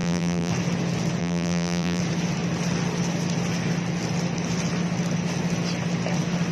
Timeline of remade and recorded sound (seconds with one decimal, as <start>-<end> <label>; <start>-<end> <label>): 0.0-0.5 remade; 0.5-1.2 recorded; 1.2-2.0 remade; 2.0-6.5 recorded